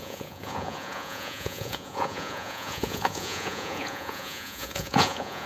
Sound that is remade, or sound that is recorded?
remade